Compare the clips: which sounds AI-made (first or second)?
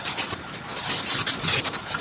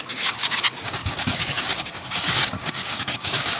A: second